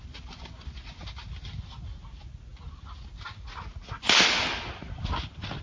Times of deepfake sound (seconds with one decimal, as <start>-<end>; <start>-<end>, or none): none

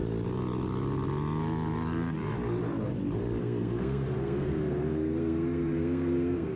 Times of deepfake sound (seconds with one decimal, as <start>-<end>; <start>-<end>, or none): 3.4-6.6